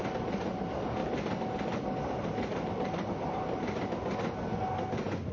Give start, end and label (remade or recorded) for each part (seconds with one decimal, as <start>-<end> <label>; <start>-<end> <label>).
0.0-5.3 recorded